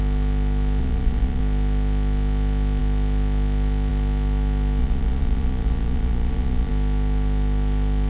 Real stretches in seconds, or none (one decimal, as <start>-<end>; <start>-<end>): 0.0-0.8; 1.4-4.8; 6.7-8.1